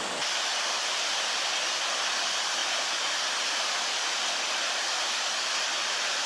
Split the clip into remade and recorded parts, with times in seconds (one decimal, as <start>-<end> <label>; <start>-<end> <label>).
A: 0.0-6.3 recorded